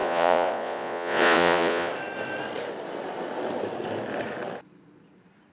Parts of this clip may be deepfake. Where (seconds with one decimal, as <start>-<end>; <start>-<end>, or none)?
0.0-1.9